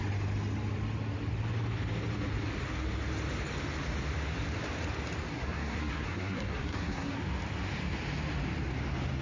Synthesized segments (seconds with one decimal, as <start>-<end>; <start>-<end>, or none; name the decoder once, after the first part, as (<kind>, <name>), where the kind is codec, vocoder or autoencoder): 5.3-7.2 (codec, SNAC)

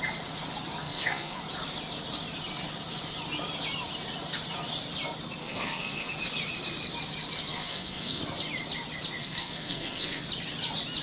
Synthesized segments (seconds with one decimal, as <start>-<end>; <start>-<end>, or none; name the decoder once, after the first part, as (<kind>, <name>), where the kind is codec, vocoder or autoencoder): 0.8-1.4 (codec, SNAC); 5.4-6.1; 7.5-8.2; 9.2-10.2

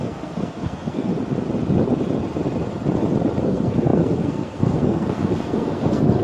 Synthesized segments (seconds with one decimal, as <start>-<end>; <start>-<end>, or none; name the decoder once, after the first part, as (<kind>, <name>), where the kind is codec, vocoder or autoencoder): 0.0-1.1 (codec, SNAC); 3.4-6.2

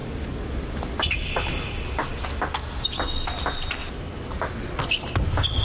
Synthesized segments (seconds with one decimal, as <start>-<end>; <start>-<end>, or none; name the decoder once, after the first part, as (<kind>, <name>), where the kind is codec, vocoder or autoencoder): none

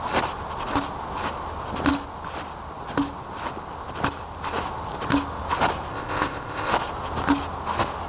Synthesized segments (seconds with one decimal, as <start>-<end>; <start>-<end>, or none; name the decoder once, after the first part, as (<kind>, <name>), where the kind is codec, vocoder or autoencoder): 5.9-6.7 (codec, ZipCodec)